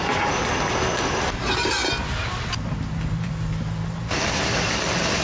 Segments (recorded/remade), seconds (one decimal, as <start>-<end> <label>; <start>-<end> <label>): 0.0-1.8 remade; 1.8-3.1 recorded; 3.1-5.2 remade